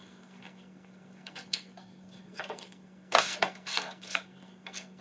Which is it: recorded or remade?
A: remade